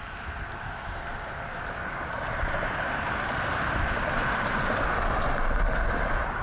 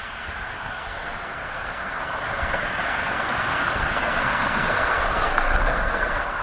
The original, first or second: first